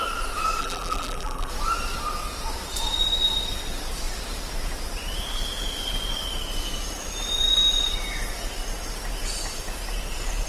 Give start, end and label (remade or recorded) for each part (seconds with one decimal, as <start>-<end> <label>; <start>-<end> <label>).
0.0-0.6 recorded; 0.6-1.5 remade; 1.5-10.5 recorded